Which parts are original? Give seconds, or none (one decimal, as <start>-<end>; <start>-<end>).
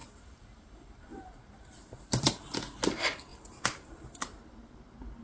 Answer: 2.3-3.3; 4.7-5.2